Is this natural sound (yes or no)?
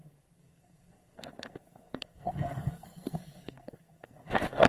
no